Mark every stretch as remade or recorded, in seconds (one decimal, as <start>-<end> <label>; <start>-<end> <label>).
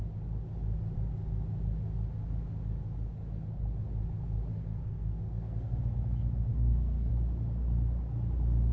0.0-4.5 recorded; 4.5-5.8 remade; 5.8-6.5 recorded; 6.5-7.1 remade; 7.1-8.7 recorded